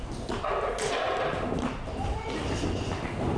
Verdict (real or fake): real